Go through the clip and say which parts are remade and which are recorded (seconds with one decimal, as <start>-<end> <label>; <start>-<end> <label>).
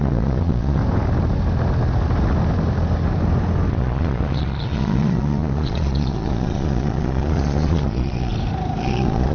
0.0-0.8 remade; 0.8-3.7 recorded; 3.7-8.3 remade; 8.3-8.8 recorded; 8.8-9.3 remade